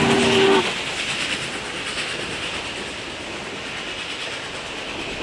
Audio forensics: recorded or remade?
recorded